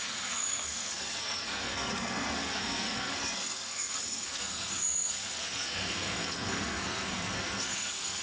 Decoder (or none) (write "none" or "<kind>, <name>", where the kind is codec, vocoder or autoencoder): codec, SNAC